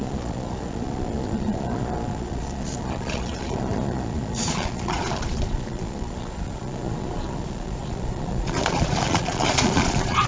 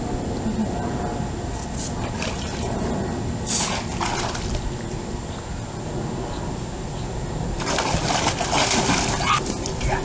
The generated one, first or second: first